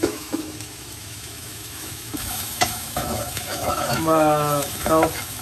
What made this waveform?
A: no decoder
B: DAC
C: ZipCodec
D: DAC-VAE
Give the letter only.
D